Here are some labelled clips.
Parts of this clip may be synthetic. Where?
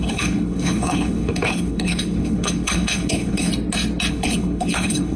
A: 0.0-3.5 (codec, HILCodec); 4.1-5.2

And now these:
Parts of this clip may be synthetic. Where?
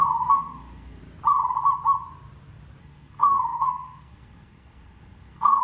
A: 0.0-1.0 (codec, SNAC); 2.8-5.6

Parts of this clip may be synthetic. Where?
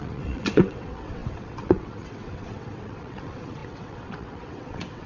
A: 0.0-5.1 (vocoder, WaveNeXt)